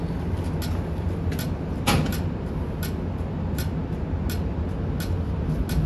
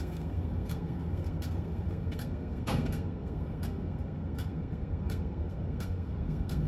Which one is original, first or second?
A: first